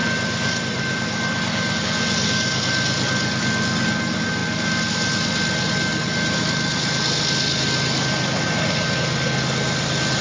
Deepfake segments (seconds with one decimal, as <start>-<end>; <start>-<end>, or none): none